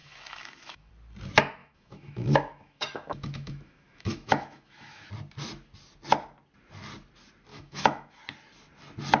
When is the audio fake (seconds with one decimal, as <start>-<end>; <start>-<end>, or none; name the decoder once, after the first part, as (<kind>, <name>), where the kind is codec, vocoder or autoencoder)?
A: 0.0-0.9 (autoencoder, DAC-VAE); 1.6-5.1; 7.5-8.2